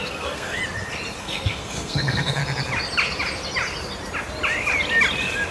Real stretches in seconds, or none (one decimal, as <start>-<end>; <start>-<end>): 0.6-1.2; 2.4-5.5